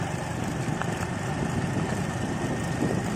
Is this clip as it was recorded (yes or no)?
yes